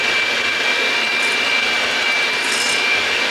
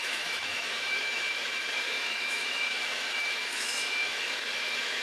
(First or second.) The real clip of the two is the first